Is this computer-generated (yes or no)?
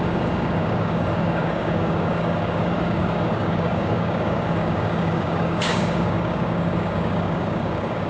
yes